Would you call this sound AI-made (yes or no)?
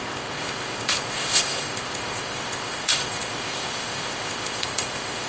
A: yes